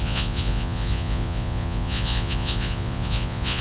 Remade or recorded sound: remade